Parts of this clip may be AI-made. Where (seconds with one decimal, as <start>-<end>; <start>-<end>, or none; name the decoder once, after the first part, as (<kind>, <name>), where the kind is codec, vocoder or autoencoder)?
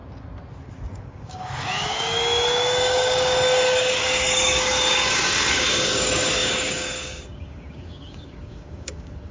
0.9-9.3 (codec, DAC)